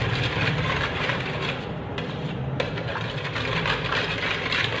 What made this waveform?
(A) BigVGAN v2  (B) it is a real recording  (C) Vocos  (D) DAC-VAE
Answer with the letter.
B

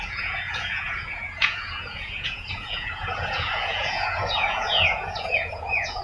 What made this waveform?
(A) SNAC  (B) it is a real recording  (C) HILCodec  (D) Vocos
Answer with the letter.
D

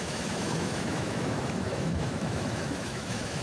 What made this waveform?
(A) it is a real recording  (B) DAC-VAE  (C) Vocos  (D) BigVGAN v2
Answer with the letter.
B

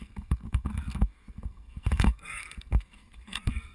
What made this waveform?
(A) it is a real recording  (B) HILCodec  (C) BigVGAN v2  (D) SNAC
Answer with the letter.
D